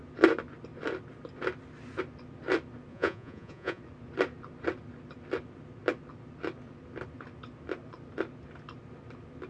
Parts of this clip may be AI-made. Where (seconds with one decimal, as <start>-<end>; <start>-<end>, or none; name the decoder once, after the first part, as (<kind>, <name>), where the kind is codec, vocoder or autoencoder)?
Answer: 2.9-3.8 (vocoder, Vocos)